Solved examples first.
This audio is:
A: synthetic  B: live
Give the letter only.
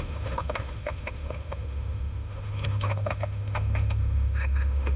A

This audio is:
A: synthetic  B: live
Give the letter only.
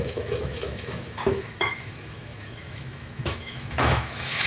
A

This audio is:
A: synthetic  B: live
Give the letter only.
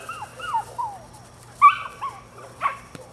B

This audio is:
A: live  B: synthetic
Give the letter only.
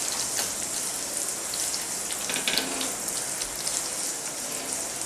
A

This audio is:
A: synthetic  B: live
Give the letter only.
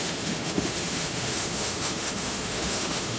A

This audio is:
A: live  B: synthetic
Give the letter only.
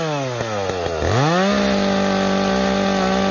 A